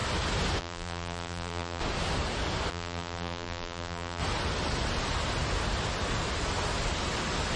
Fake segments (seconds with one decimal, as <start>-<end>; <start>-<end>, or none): 0.6-1.8; 2.7-4.2